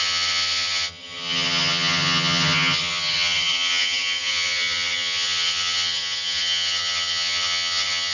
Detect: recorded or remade remade